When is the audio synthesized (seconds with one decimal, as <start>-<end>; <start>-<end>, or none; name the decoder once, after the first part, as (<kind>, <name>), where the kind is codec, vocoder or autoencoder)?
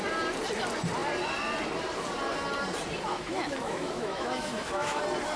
3.1-5.0 (autoencoder, DAC-VAE)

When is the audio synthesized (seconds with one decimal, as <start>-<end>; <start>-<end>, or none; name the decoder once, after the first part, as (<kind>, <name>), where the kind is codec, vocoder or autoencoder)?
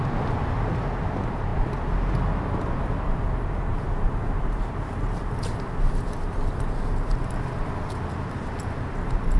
none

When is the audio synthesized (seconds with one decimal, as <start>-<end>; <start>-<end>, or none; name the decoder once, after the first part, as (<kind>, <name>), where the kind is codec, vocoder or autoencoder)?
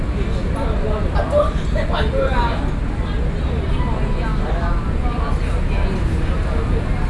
none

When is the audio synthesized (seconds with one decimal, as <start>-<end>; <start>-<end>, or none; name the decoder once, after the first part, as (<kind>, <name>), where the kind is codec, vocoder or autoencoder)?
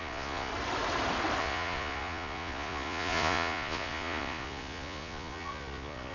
0.0-0.5 (vocoder, Vocos); 1.4-6.1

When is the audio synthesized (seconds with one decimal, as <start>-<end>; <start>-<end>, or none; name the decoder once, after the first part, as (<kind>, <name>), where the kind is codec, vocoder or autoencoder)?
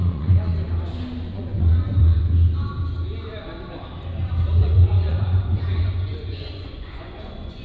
0.0-0.5 (vocoder, Vocos); 1.3-2.2; 4.6-7.6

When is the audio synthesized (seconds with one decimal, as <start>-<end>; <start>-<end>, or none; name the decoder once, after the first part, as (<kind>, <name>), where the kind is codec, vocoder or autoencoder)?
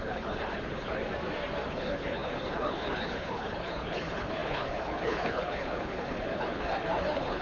0.0-1.0 (codec, HILCodec); 1.7-7.4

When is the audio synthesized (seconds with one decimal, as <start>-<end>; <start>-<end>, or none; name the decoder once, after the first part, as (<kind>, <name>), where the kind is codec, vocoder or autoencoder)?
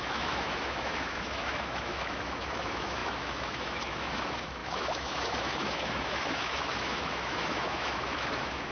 0.0-8.7 (autoencoder, DAC-VAE)